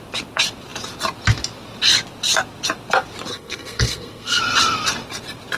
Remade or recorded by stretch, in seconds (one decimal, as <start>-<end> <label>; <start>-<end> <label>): 0.0-3.3 recorded; 3.3-4.4 remade; 4.4-5.6 recorded

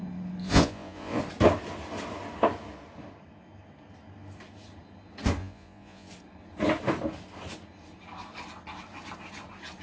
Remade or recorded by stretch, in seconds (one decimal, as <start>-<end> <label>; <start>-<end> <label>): 0.0-0.4 recorded; 0.4-1.2 remade; 1.2-5.4 recorded; 5.4-6.1 remade; 6.1-9.8 recorded

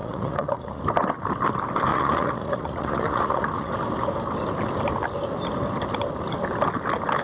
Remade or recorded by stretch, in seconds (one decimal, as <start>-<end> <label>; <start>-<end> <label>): 0.0-0.8 remade; 0.8-1.9 recorded; 1.9-3.7 remade; 3.7-7.2 recorded

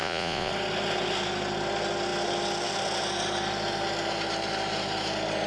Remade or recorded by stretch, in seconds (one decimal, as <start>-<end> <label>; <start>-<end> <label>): 0.0-0.5 remade; 0.5-5.5 recorded

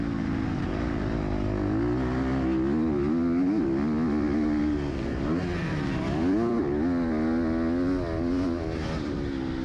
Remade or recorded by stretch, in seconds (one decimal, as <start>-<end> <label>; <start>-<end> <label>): 0.0-5.6 recorded; 5.6-6.6 remade; 6.6-9.6 recorded